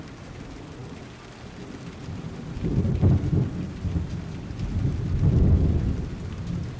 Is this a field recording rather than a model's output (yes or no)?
yes